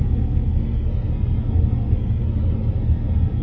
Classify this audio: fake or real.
fake